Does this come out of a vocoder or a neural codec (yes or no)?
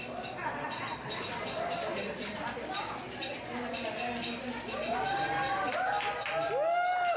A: no